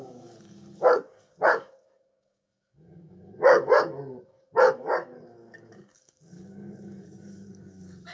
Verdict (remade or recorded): remade